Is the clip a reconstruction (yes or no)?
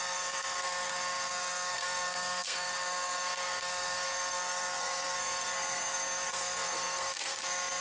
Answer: yes